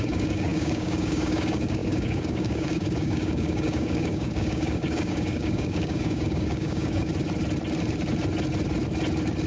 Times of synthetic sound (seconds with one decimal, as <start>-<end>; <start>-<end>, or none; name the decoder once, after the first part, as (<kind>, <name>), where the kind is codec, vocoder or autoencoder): 0.0-7.1 (codec, DAC)